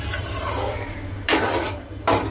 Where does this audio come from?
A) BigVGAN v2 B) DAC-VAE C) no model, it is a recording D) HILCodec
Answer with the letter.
A